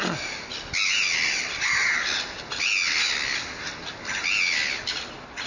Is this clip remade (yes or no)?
no